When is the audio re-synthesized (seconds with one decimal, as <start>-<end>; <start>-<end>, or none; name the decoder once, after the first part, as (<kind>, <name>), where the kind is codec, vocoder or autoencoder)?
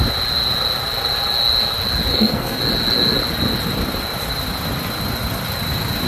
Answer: 2.1-2.6 (codec, SNAC)